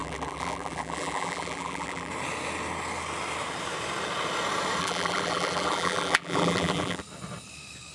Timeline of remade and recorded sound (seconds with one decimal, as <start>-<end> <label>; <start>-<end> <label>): 0.0-2.1 remade; 2.1-4.8 recorded; 4.8-7.0 remade; 7.0-7.9 recorded